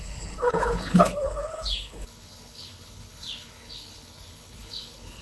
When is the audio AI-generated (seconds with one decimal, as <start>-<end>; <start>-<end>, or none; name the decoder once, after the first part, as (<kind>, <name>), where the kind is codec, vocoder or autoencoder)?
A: 0.0-5.2 (codec, HILCodec)